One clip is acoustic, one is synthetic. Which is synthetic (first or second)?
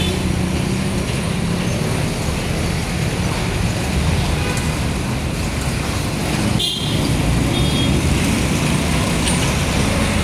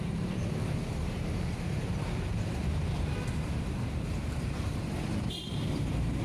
second